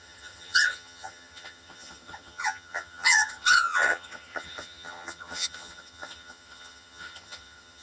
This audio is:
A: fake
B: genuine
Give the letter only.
A